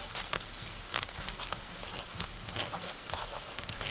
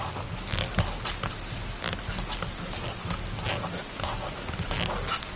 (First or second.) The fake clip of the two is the first